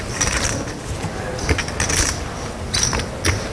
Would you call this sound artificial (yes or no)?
no